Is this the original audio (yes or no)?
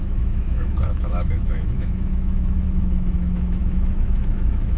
no